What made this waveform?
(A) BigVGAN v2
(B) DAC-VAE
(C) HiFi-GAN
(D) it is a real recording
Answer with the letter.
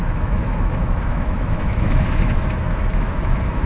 B